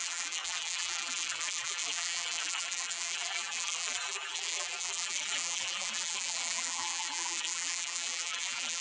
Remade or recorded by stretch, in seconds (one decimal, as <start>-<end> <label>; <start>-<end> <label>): 0.0-8.8 remade